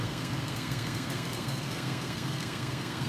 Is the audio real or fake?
fake